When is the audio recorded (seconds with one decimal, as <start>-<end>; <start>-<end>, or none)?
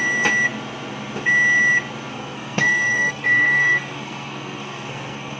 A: 0.0-2.1